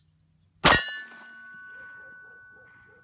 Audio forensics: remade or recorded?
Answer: recorded